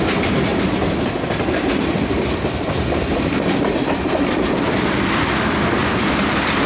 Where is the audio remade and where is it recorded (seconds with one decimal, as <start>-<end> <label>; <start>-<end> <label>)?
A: 0.0-6.7 recorded